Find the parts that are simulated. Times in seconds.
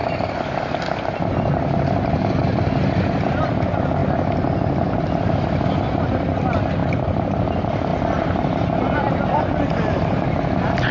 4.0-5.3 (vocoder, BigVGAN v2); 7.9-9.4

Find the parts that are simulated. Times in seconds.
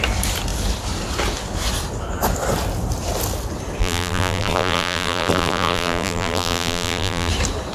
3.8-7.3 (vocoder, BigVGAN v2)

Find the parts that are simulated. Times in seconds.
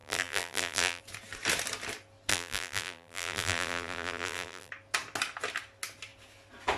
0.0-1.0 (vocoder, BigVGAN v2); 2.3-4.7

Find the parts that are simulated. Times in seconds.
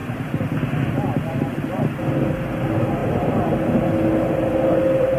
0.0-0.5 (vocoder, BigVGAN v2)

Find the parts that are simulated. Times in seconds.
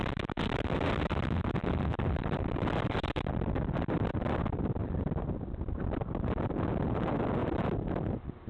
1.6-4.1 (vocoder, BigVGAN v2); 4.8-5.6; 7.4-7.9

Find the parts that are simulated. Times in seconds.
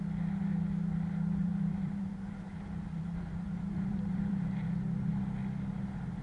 1.4-5.1 (vocoder, BigVGAN v2)